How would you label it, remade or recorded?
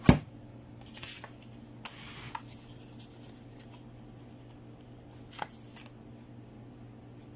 recorded